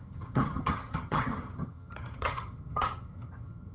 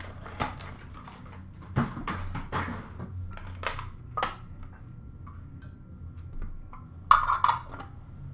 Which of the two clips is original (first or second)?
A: second